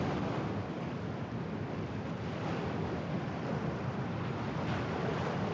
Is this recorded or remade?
recorded